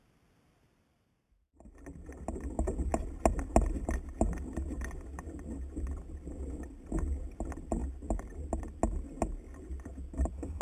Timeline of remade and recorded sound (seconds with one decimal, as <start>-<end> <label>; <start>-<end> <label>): 0.0-10.6 recorded